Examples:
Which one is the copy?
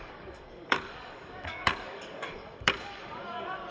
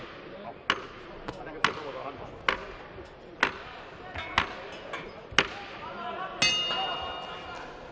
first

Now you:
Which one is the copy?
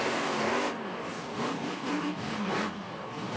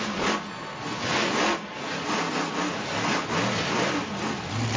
first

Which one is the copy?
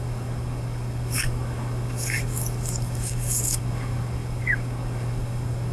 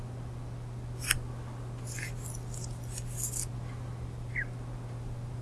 first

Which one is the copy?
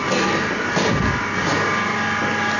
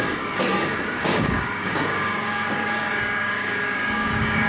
second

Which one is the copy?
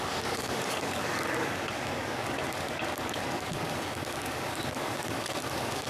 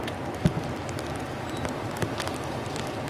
first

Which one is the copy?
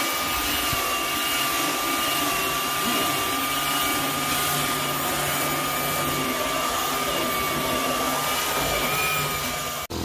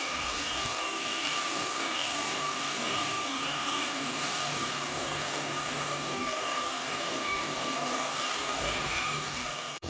second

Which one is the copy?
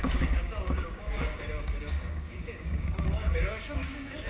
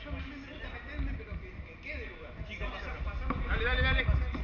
first